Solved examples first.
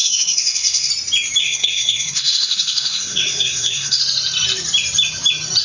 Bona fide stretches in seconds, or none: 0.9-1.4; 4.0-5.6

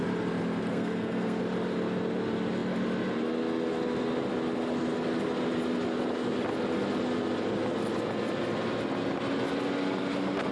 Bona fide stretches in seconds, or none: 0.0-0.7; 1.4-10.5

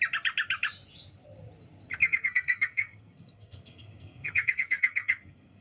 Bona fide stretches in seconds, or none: 0.0-2.0